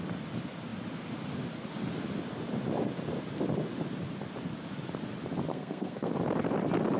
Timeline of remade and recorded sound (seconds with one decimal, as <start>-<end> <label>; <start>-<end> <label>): 0.0-5.5 recorded; 5.5-6.1 remade; 6.1-7.0 recorded